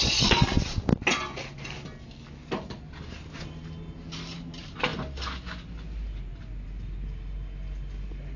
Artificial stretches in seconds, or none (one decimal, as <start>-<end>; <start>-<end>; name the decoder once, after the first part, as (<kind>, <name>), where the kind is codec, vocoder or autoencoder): none